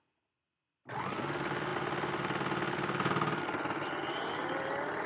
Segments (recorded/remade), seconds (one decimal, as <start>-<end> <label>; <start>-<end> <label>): 0.0-5.1 recorded